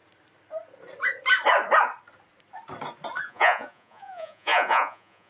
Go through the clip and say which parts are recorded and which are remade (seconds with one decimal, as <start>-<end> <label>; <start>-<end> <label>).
0.0-3.2 recorded; 3.2-5.3 remade

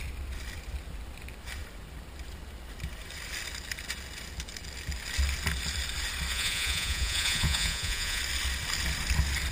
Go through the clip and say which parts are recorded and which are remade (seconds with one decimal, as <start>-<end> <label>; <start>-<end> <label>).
0.0-6.3 recorded; 6.3-8.2 remade; 8.2-9.5 recorded

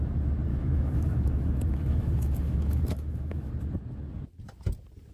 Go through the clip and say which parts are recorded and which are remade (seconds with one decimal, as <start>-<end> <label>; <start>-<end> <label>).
0.0-0.5 recorded; 0.5-3.5 remade; 3.5-5.1 recorded

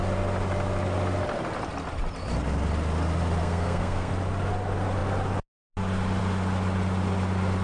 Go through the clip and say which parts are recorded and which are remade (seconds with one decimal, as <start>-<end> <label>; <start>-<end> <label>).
0.0-3.4 recorded; 3.4-4.1 remade; 4.1-7.6 recorded

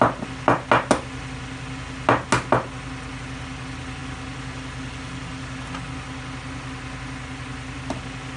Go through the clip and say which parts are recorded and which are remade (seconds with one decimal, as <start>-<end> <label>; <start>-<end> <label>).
0.0-8.4 recorded

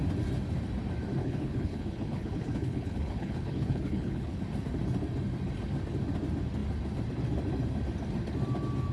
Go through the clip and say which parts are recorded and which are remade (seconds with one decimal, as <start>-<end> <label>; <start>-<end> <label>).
0.0-1.2 recorded; 1.2-4.4 remade; 4.4-8.9 recorded

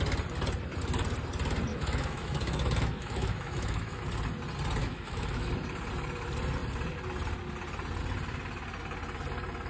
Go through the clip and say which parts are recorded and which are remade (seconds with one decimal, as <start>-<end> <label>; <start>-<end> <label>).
0.0-1.7 recorded; 1.7-4.0 remade; 4.0-4.8 recorded; 4.8-5.5 remade; 5.5-9.7 recorded